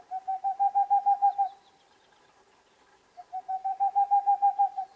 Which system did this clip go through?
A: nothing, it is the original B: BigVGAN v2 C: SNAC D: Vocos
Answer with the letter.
A